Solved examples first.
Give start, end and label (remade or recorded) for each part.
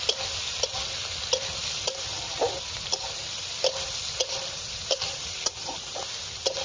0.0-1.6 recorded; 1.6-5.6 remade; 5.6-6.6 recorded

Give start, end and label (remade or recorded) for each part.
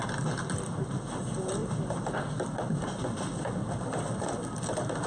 0.0-5.1 recorded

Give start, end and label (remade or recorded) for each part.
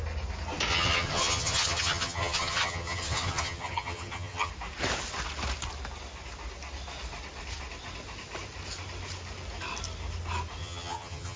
0.0-0.7 recorded; 0.7-4.5 remade; 4.5-10.6 recorded; 10.6-11.4 remade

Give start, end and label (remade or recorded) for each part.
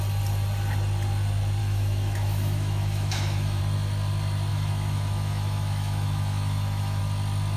0.0-1.6 recorded; 1.6-3.6 remade; 3.6-4.5 recorded; 4.5-7.0 remade; 7.0-7.6 recorded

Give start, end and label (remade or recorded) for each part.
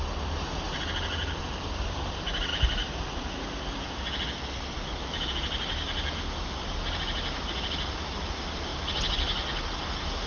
0.0-10.3 recorded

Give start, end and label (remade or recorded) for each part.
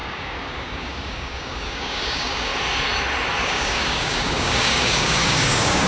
0.0-2.5 remade; 2.5-3.4 recorded; 3.4-5.9 remade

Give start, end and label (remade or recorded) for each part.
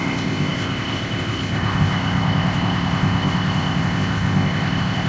0.0-5.1 remade